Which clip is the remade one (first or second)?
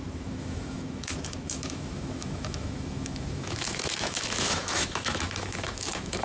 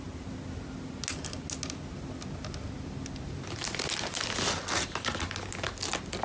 first